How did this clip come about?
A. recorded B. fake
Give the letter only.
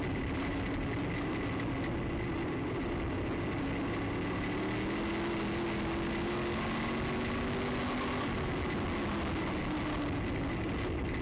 A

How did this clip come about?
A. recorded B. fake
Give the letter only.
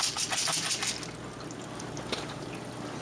A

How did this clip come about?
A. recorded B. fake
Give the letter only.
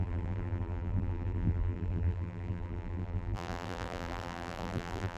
B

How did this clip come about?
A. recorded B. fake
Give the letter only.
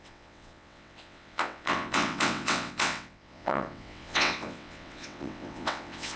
B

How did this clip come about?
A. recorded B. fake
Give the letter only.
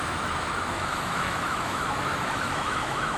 B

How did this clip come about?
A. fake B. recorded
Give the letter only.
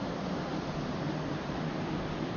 B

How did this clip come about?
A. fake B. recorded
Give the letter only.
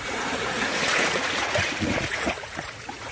A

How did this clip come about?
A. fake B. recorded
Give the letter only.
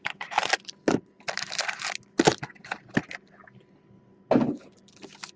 B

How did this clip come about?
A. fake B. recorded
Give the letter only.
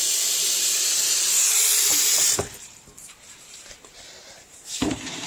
A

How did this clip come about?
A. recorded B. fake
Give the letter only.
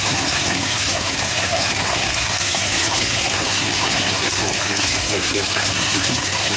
B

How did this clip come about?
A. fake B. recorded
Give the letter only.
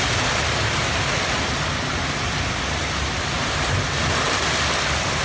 B